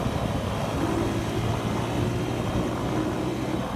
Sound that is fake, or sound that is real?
real